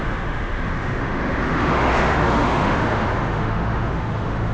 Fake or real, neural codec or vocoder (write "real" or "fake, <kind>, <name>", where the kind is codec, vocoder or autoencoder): fake, autoencoder, DAC-VAE